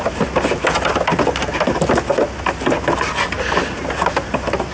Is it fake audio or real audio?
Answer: real